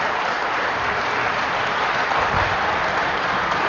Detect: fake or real fake